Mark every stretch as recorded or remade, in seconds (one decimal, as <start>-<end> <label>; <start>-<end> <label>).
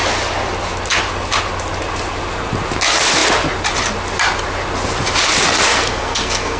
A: 0.0-5.7 recorded; 5.7-6.6 remade